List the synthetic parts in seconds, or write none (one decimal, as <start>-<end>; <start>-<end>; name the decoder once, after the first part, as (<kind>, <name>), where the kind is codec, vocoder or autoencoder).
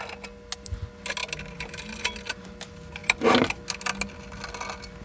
none